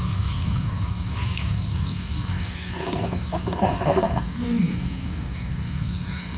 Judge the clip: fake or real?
fake